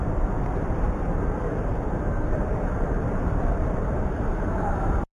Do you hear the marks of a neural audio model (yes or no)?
yes